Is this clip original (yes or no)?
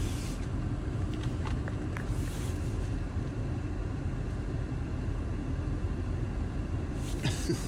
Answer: yes